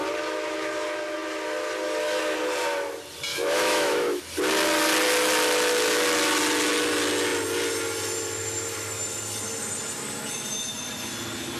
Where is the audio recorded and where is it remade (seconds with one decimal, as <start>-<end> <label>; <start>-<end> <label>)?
0.0-3.3 recorded; 3.3-4.2 remade; 4.2-11.6 recorded